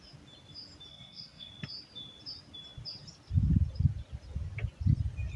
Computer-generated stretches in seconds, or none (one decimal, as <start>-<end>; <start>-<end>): 0.9-1.5